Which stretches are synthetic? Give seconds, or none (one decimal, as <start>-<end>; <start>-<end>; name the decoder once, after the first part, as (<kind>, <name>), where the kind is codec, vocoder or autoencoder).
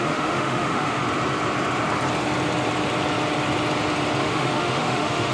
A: 0.0-1.0 (autoencoder, DAC-VAE); 4.2-5.3